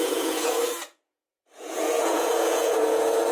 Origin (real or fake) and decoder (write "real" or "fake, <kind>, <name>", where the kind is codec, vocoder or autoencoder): fake, vocoder, Vocos